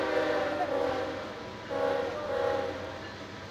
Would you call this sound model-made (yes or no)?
no